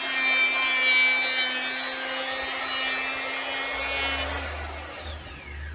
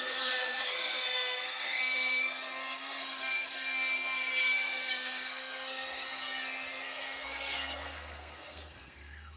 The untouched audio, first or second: first